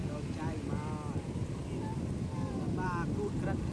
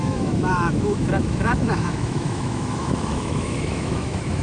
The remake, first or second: second